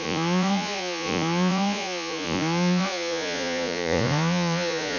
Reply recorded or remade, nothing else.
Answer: remade